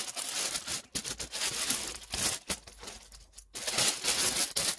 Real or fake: real